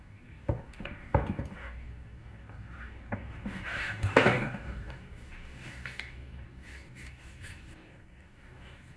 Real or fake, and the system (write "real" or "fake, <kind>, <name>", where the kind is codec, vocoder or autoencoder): fake, codec, DAC